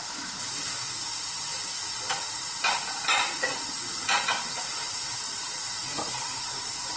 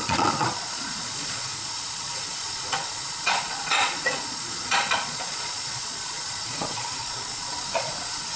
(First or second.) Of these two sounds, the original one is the first